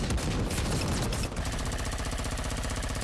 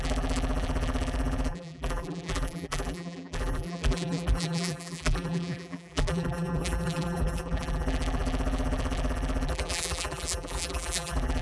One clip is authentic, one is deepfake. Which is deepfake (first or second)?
second